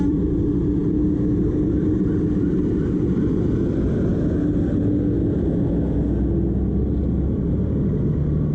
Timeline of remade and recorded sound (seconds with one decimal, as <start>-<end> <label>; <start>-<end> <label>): 0.0-0.8 remade; 0.8-1.8 recorded; 1.8-4.1 remade; 4.1-8.5 recorded